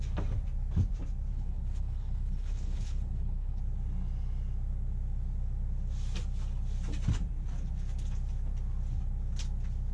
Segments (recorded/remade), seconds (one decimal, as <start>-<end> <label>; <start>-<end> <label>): 0.0-1.3 recorded; 1.3-3.6 remade; 3.6-9.9 recorded